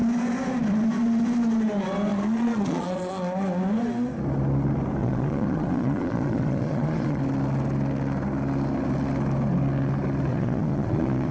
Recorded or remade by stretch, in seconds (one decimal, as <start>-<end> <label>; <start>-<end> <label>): 0.0-2.1 recorded; 2.1-3.1 remade; 3.1-5.0 recorded; 5.0-7.2 remade; 7.2-10.3 recorded; 10.3-11.3 remade